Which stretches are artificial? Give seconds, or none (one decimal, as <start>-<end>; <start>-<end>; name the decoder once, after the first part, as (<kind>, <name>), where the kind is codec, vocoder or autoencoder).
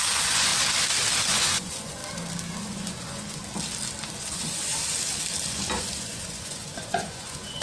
0.0-0.5 (vocoder, Vocos); 1.3-2.0; 2.6-3.4; 4.2-4.7; 5.5-7.6